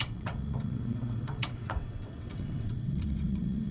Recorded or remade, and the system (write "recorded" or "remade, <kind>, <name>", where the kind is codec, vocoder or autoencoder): remade, vocoder, WaveNeXt